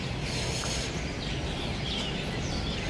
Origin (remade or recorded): recorded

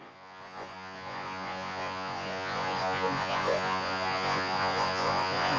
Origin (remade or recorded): remade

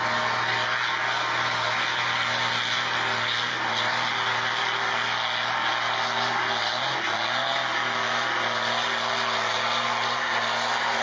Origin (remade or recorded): recorded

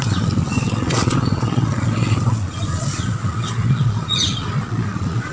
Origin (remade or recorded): remade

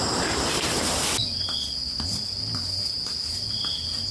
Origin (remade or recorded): recorded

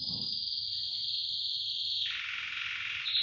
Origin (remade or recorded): recorded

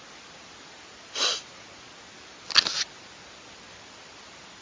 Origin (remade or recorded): recorded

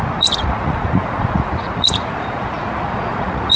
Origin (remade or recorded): remade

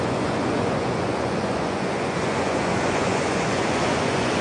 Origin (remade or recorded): remade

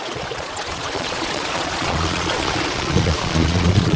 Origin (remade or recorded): remade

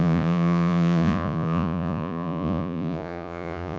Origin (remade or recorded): remade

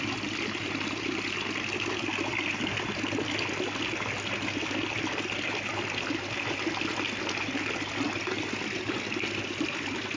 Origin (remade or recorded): recorded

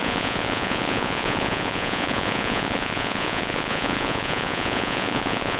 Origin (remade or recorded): remade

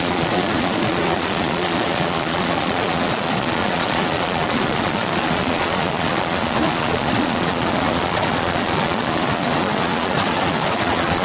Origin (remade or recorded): remade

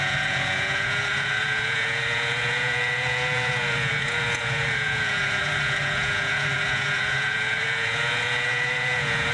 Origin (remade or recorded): remade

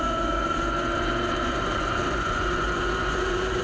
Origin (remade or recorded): remade